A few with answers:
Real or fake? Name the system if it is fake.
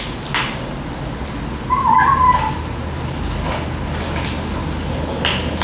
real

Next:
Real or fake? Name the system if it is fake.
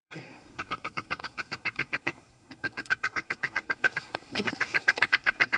fake, codec, SNAC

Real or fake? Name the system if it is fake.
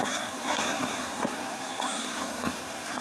fake, codec, SNAC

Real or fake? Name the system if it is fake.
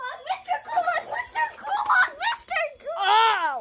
real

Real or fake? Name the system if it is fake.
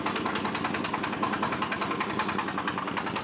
real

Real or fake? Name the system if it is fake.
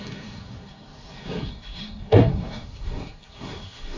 fake, codec, SNAC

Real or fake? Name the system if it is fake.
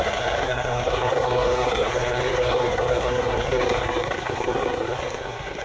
fake, codec, SNAC